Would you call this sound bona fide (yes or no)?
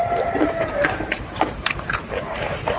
no